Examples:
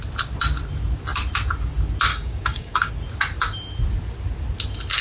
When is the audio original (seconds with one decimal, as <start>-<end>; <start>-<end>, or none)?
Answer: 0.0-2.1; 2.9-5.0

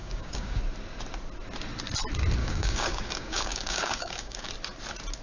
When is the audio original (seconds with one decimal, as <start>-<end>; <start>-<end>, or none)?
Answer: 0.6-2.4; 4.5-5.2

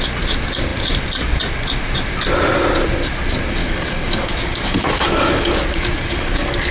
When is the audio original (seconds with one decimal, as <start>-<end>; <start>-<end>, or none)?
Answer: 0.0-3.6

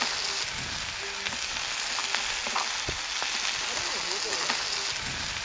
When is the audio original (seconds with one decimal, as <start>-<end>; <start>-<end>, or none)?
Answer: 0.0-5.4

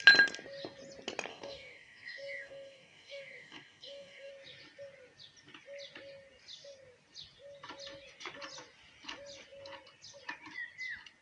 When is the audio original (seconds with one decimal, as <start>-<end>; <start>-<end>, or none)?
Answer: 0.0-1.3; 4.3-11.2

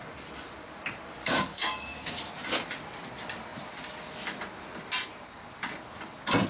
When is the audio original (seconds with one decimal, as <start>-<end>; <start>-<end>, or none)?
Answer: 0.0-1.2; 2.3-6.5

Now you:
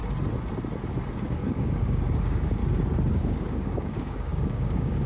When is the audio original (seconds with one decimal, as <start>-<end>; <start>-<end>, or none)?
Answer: 0.0-1.1; 2.6-3.1